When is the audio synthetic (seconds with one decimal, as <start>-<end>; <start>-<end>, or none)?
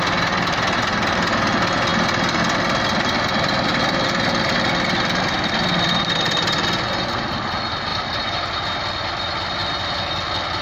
7.9-8.5